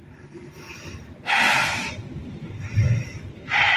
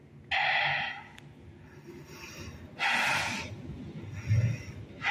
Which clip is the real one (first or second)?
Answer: second